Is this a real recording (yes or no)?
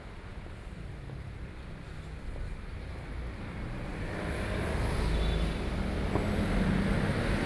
yes